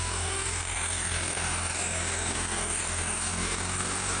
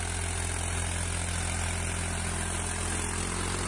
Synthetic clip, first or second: first